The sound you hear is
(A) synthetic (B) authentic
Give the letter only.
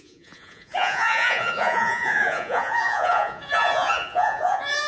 A